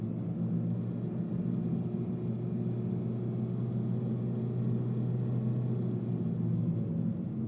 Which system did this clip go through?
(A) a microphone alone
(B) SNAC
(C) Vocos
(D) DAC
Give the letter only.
A